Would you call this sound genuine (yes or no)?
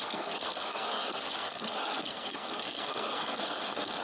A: no